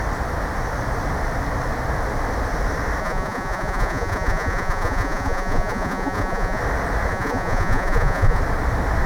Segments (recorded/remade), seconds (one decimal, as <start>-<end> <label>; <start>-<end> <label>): 0.0-3.0 recorded; 3.0-6.6 remade; 6.6-7.1 recorded; 7.1-8.4 remade; 8.4-9.1 recorded